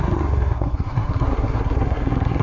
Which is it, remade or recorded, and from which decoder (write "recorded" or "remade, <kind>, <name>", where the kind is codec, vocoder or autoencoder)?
remade, codec, SNAC